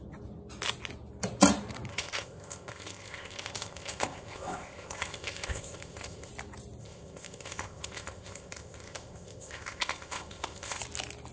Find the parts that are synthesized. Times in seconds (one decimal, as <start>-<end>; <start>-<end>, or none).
1.9-6.3; 6.8-10.8